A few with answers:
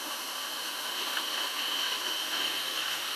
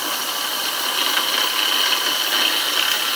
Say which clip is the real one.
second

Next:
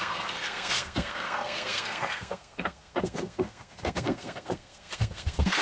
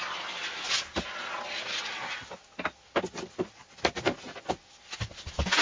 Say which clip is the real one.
second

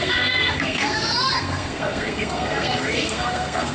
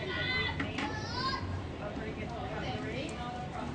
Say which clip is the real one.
second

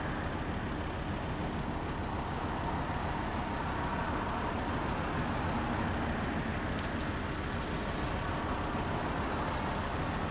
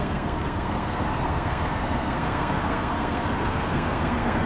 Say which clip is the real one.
first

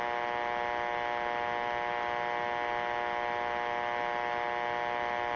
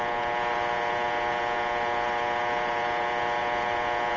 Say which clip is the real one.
first